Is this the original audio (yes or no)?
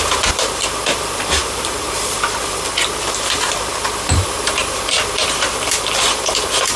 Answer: no